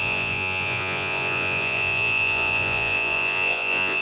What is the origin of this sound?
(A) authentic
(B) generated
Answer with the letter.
B